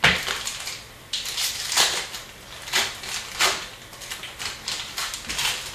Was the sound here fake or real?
real